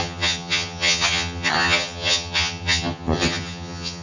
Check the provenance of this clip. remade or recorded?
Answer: remade